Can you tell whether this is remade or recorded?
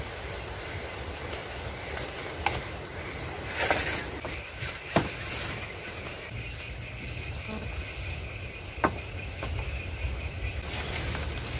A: recorded